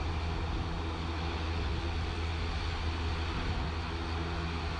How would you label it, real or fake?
real